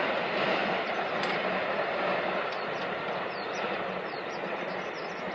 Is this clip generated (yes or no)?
no